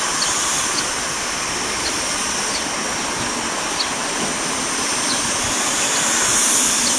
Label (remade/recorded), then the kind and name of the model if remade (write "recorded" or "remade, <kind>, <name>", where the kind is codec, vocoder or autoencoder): recorded